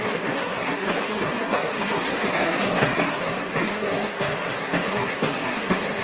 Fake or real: fake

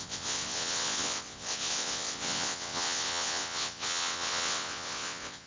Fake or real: fake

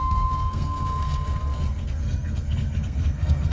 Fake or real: fake